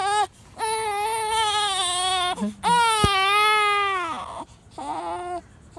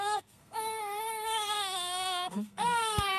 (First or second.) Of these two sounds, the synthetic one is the second